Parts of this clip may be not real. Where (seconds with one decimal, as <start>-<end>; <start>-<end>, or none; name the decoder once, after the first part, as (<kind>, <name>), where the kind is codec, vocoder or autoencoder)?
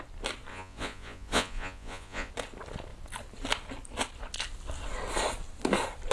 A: 0.5-2.3 (vocoder, Vocos)